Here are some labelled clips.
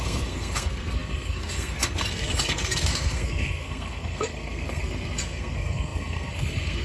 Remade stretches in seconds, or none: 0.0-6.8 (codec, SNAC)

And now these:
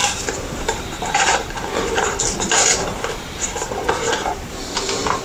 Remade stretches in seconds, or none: 0.0-5.2 (vocoder, BigVGAN v2)